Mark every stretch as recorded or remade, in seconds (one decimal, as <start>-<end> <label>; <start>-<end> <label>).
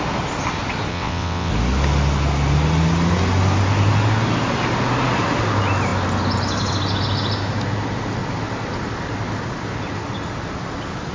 0.0-0.9 recorded; 0.9-1.5 remade; 1.5-11.1 recorded